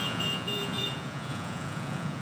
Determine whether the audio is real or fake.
fake